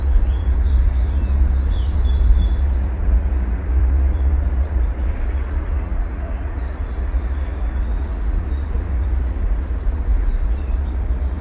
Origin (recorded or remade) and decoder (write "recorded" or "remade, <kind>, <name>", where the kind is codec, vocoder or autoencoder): remade, vocoder, Vocos